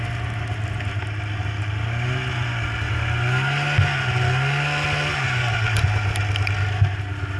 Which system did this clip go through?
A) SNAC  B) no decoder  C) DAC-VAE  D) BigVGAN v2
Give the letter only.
B